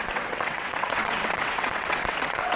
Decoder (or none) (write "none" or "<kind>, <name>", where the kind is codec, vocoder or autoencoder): vocoder, WaveNeXt